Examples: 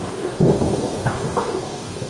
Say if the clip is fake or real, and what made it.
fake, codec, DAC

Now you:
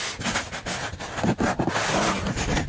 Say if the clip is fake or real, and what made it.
real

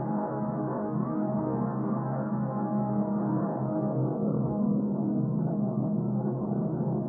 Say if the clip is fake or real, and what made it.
fake, codec, DAC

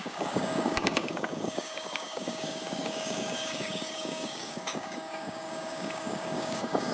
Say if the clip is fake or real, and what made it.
fake, codec, DAC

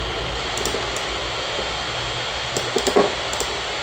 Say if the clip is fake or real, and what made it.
real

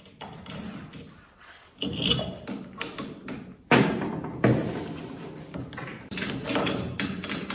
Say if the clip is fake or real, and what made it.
real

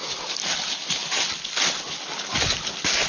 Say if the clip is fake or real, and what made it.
real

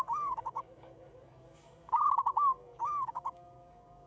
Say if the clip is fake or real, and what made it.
fake, codec, DAC